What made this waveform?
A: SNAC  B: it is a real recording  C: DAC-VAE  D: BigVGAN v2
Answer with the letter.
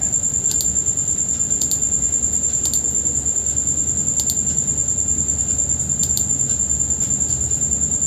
B